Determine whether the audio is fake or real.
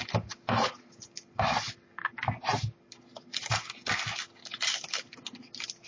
real